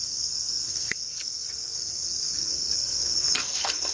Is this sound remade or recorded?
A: remade